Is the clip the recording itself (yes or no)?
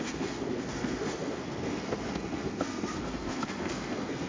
no